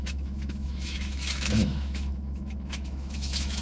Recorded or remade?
remade